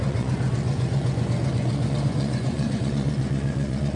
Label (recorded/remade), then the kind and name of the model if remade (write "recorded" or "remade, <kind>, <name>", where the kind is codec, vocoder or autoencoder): remade, vocoder, Vocos